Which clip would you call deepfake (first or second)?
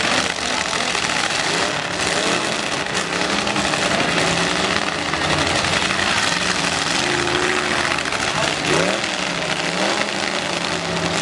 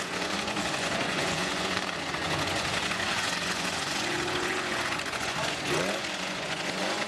second